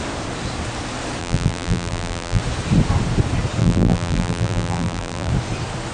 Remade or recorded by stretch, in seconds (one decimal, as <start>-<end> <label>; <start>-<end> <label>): 0.0-1.2 recorded; 1.2-2.4 remade; 2.4-3.6 recorded; 3.6-5.3 remade; 5.3-5.9 recorded